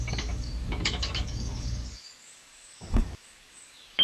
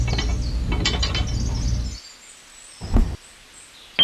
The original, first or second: second